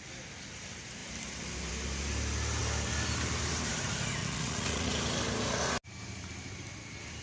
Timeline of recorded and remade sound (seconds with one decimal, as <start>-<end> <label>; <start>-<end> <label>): 0.0-4.2 recorded; 4.2-4.9 remade; 4.9-7.2 recorded